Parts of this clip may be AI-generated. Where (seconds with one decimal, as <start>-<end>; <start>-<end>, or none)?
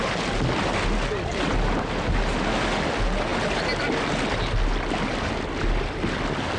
none